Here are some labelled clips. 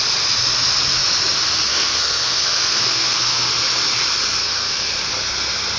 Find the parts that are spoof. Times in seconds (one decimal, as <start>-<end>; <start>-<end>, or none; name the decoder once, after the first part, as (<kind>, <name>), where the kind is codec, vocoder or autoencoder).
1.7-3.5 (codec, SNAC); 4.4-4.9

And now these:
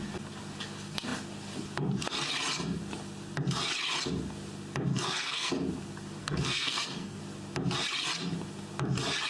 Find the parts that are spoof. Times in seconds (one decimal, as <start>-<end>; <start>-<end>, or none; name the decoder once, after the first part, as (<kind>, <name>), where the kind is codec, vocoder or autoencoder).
4.9-5.5 (codec, SNAC); 6.2-7.2

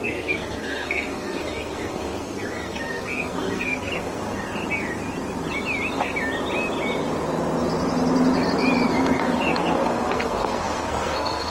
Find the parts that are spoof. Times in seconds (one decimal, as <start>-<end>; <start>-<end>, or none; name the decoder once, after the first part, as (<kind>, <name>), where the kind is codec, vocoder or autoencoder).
0.0-4.5 (codec, SNAC); 8.9-11.5

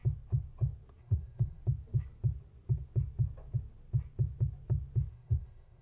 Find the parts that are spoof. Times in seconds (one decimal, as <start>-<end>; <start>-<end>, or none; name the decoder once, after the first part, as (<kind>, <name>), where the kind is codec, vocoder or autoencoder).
1.0-1.6 (codec, SNAC); 5.1-5.8

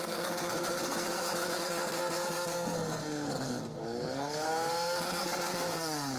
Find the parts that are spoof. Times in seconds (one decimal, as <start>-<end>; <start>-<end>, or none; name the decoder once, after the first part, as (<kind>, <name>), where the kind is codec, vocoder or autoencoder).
0.0-6.2 (codec, SNAC)